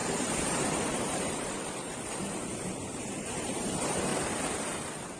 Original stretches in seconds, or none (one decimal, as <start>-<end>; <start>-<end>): 4.1-5.2